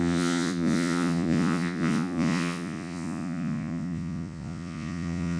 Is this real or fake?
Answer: fake